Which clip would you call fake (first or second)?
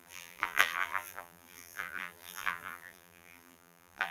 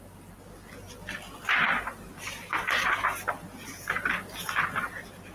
first